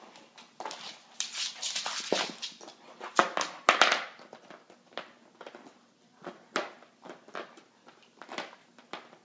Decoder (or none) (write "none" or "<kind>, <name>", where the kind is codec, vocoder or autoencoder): none